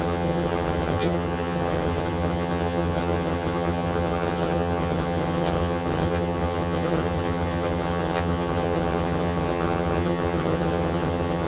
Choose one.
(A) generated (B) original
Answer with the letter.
A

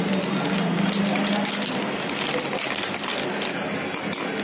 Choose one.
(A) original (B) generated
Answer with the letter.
A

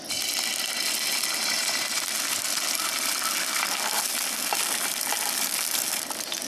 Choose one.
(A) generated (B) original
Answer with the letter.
B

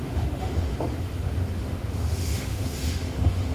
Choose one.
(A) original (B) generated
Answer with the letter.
B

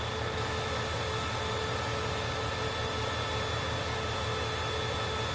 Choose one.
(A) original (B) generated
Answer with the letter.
A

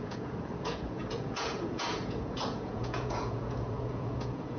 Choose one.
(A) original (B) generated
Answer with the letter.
B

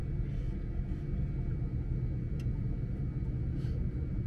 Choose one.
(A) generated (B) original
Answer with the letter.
B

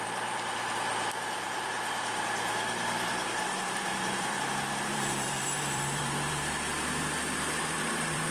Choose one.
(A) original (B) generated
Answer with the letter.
B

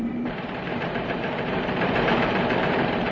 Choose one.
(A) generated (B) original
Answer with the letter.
A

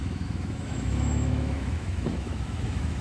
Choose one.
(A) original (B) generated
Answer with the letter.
B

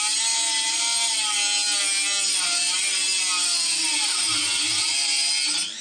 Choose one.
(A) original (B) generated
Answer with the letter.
A